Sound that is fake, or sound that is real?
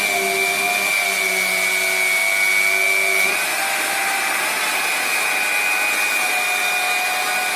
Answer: real